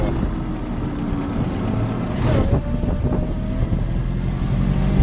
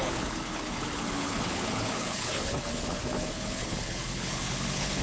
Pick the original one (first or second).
first